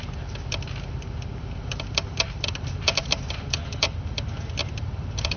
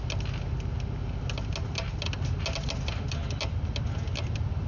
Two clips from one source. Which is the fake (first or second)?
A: first